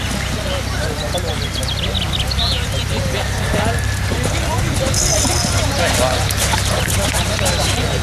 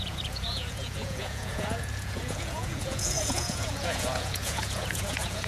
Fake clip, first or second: second